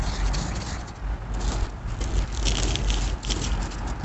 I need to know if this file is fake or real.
real